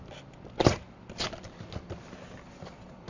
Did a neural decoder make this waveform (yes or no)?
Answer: no